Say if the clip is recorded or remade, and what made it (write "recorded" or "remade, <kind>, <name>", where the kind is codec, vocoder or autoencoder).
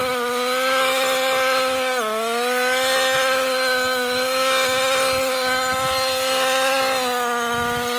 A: recorded